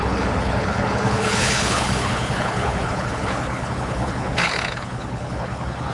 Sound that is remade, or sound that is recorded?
remade